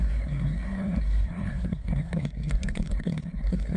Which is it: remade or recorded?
remade